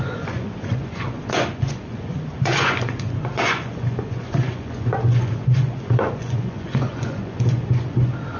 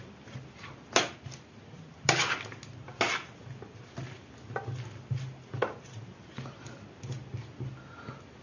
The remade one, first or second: first